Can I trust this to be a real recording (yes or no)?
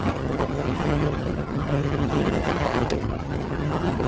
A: no